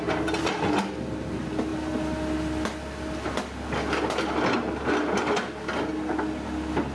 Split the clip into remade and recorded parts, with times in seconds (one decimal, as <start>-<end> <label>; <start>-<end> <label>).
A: 0.0-6.9 recorded